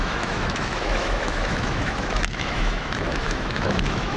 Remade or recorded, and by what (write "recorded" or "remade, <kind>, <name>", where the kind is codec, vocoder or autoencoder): remade, autoencoder, DAC-VAE